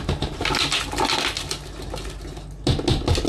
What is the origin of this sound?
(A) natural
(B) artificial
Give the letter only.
A